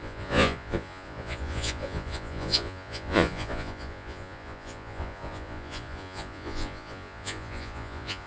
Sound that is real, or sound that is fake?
fake